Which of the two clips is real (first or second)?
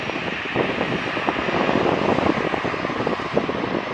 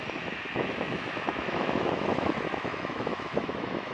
first